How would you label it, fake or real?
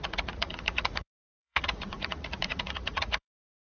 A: fake